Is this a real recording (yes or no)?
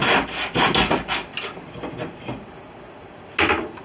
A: yes